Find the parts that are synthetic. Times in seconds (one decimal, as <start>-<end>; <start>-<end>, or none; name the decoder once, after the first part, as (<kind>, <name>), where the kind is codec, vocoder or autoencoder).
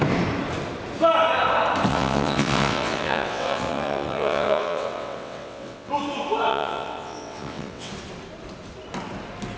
1.9-5.9 (vocoder, WaveNeXt); 6.5-7.9